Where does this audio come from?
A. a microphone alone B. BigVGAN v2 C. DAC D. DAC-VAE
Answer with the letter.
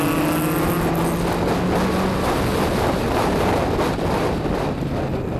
A